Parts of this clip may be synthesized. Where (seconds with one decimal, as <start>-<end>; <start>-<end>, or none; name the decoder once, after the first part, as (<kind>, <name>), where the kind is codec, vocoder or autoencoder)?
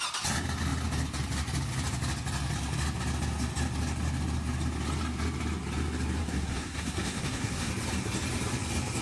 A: 6.2-7.7 (codec, SNAC)